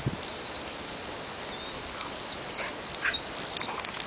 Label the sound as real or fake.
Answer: real